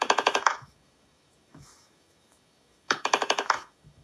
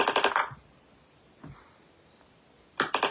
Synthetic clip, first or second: first